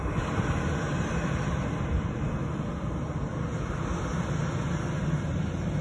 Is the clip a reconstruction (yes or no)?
no